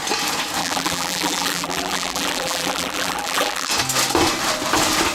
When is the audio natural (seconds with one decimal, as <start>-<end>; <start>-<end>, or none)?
0.0-0.6; 3.7-5.1

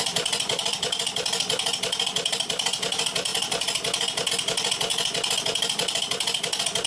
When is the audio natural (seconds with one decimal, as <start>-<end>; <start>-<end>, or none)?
3.3-4.3; 4.9-5.4

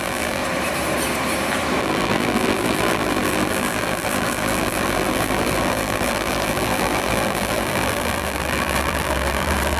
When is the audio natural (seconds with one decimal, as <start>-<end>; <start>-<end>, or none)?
0.4-1.8

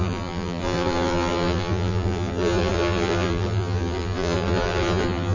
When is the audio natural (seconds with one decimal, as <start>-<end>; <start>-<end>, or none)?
none